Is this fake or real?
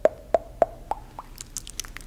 real